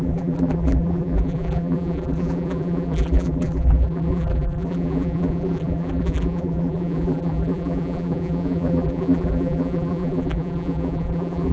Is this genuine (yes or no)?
no